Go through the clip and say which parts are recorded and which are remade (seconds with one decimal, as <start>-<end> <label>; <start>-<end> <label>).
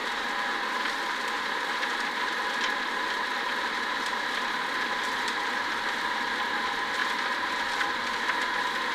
0.0-8.9 recorded